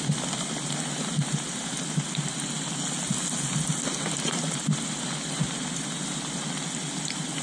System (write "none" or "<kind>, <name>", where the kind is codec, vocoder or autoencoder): none